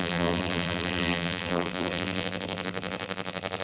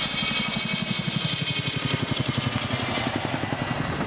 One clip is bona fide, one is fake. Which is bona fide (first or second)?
second